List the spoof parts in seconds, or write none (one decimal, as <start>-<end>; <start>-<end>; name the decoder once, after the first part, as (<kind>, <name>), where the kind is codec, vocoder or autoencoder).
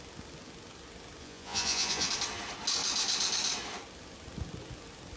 1.2-2.1 (vocoder, Vocos)